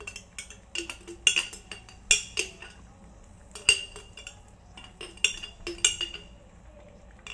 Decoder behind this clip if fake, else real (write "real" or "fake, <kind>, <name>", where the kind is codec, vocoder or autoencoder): real